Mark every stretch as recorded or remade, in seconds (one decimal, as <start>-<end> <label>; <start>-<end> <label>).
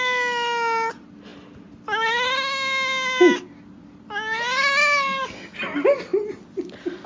0.0-7.1 recorded